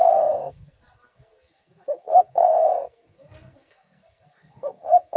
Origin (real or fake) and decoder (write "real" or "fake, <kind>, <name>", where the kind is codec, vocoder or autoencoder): fake, codec, SNAC